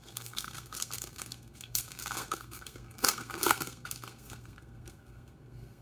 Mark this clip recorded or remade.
remade